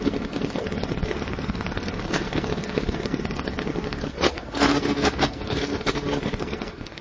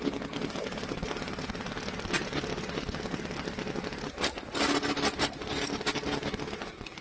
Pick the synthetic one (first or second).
first